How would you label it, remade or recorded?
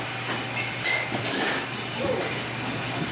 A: recorded